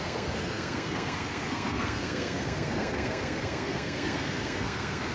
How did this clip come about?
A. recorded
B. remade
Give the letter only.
B